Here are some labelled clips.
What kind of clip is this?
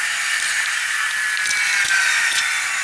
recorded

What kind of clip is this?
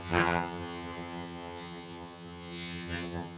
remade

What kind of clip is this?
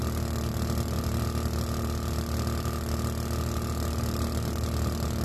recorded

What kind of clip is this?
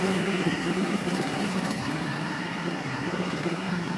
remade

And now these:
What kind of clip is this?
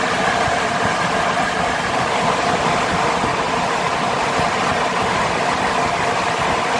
recorded